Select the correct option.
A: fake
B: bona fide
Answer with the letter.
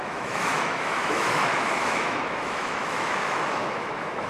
A